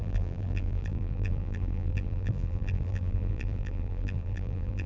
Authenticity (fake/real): fake